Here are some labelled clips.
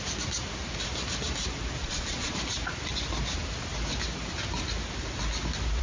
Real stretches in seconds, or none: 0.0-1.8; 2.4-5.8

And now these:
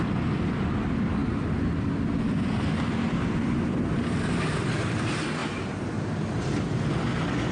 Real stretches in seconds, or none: 0.0-7.5

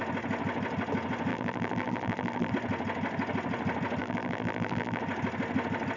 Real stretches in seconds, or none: 0.0-1.3; 2.5-4.0; 5.0-6.0

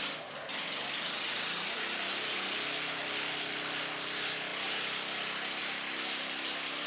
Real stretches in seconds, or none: 0.0-6.9

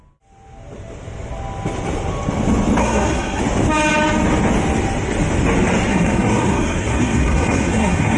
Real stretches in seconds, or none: 0.0-2.8; 3.4-5.9

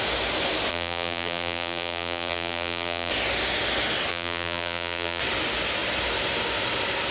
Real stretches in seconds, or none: 0.0-0.7; 3.1-4.1; 5.2-7.1

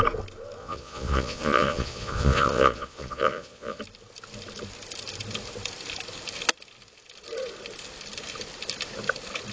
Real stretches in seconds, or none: 0.0-0.6; 3.8-9.5